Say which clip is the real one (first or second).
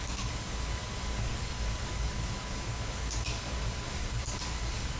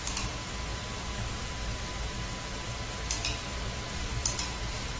second